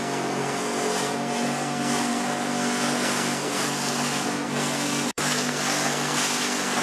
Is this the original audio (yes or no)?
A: no